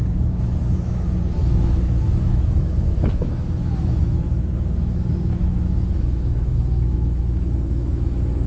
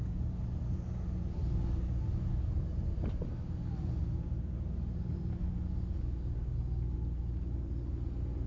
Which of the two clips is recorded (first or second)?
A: second